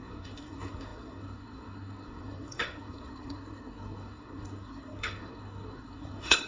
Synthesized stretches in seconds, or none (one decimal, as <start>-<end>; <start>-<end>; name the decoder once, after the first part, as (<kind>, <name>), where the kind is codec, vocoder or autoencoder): 0.0-6.5 (codec, SNAC)